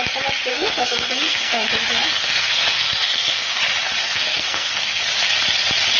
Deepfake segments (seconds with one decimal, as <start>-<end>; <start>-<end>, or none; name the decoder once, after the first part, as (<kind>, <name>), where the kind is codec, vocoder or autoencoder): 0.5-1.7 (codec, SNAC); 2.1-3.6; 4.0-5.0